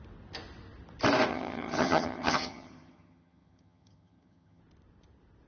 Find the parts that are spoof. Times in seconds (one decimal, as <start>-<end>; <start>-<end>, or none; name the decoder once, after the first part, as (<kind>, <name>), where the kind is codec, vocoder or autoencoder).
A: 1.3-4.6 (vocoder, HiFi-GAN)